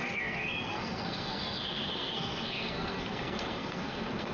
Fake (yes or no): yes